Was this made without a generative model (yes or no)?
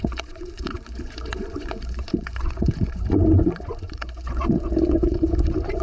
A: no